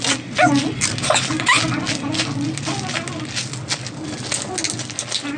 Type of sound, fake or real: real